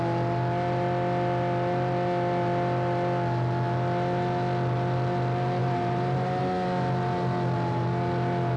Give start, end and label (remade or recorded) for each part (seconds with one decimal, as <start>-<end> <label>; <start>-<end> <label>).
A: 0.0-5.6 recorded; 5.6-6.4 remade; 6.4-8.6 recorded